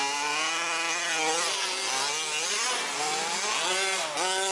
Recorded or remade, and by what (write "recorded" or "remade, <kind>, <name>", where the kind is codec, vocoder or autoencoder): recorded